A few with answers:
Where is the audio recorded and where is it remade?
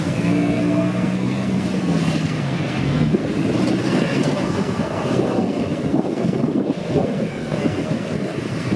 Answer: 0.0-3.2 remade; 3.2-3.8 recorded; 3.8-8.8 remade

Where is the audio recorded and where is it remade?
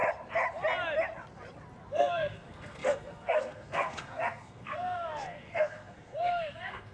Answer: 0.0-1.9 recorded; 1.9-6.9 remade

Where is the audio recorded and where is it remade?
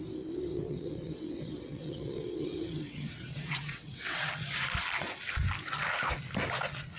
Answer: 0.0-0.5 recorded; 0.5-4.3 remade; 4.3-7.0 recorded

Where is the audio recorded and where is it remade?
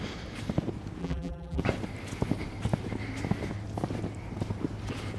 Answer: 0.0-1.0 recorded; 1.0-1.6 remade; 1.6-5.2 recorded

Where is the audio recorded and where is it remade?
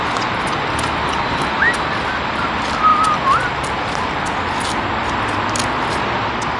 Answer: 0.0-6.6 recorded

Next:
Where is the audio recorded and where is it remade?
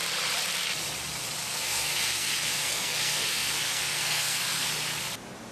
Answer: 0.0-1.4 recorded; 1.4-4.7 remade; 4.7-5.5 recorded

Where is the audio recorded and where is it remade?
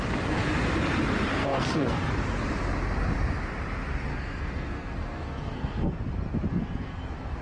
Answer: 0.0-1.4 recorded; 1.4-2.1 remade; 2.1-4.1 recorded; 4.1-6.0 remade; 6.0-6.5 recorded; 6.5-7.0 remade; 7.0-7.4 recorded